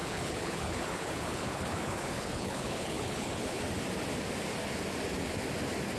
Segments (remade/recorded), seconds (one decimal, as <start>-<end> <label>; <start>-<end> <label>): 0.0-3.6 remade; 3.6-6.0 recorded